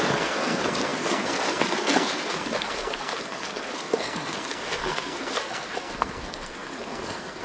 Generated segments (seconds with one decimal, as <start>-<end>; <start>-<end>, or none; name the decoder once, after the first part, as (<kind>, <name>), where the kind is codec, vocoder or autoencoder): 0.0-7.4 (codec, SNAC)